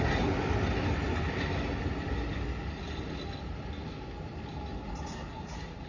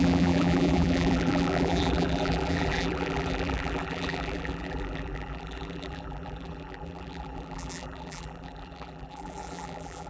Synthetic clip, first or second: second